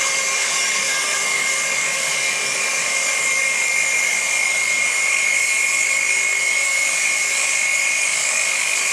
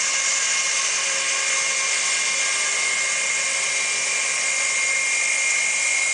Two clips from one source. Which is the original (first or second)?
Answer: second